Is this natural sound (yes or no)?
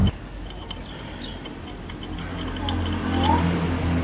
yes